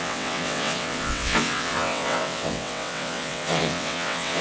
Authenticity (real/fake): fake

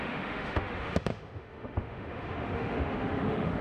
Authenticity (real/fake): fake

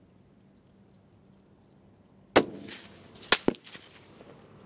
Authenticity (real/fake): real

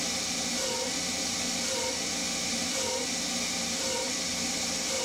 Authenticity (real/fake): real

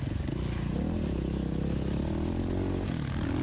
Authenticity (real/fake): real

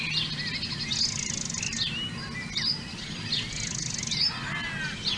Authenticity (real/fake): real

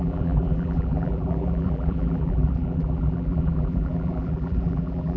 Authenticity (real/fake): fake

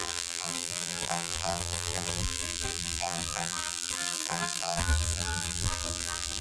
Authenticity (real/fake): fake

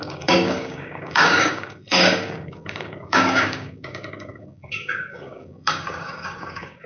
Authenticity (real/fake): fake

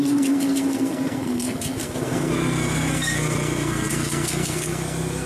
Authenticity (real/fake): fake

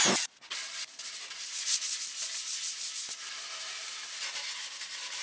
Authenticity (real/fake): real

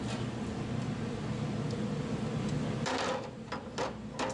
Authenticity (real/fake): real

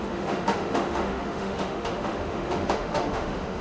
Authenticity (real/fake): fake